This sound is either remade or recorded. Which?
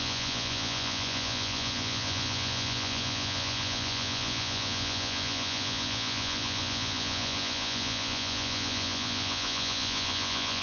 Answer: remade